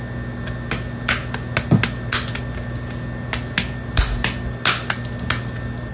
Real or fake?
real